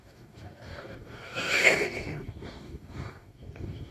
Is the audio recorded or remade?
remade